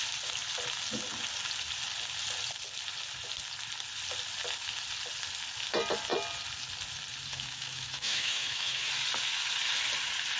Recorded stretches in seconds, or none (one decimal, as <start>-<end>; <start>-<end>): 0.0-7.3; 8.9-10.4